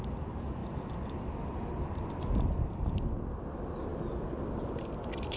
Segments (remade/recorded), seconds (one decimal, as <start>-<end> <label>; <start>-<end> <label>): 0.0-5.4 recorded